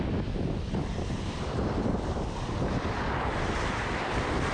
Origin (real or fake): real